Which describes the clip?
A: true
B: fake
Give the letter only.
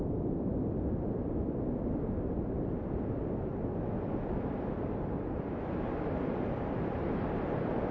B